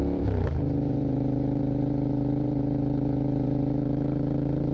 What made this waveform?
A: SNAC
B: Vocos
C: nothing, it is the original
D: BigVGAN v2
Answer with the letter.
D